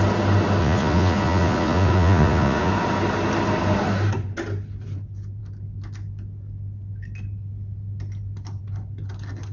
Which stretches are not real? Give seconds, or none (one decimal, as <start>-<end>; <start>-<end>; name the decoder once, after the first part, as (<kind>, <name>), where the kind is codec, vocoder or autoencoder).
0.6-2.7 (vocoder, Vocos)